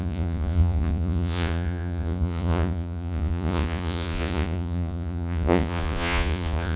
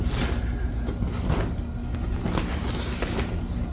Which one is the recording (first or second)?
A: second